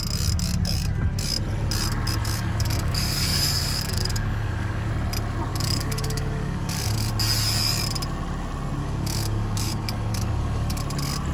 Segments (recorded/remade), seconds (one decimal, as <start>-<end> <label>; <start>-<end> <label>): 0.0-2.2 recorded; 2.2-4.9 remade; 4.9-5.5 recorded; 5.5-7.1 remade; 7.1-8.8 recorded; 8.8-10.8 remade; 10.8-11.3 recorded